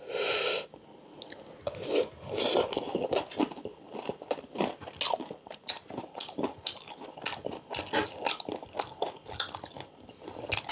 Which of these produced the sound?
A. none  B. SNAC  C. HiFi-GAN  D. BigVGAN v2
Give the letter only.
A